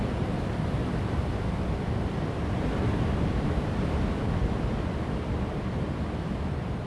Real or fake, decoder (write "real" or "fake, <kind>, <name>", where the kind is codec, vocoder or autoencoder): real